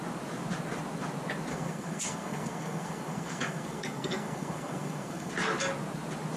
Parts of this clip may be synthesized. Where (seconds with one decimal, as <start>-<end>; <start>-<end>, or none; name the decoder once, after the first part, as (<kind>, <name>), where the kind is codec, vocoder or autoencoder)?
1.5-5.3 (codec, SNAC)